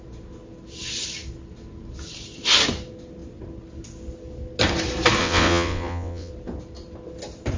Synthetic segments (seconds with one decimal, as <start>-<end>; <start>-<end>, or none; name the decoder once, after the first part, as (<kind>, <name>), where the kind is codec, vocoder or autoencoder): 5.2-6.3 (vocoder, WaveNeXt)